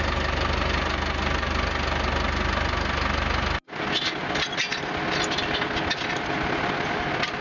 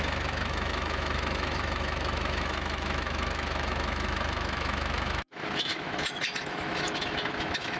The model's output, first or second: second